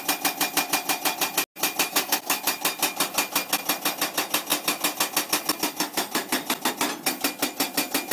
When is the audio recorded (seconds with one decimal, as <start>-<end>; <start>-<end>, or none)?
0.0-1.9; 2.4-8.1